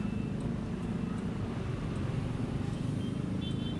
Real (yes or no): yes